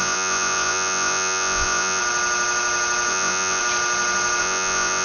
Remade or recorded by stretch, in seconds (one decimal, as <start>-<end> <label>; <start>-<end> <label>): 0.0-2.0 remade; 2.0-3.1 recorded; 3.1-3.6 remade; 3.6-4.4 recorded; 4.4-5.0 remade